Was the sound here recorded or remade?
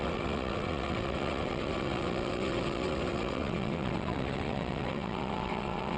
remade